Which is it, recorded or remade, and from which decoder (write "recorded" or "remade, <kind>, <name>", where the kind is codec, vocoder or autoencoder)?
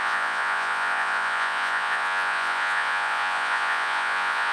remade, vocoder, Vocos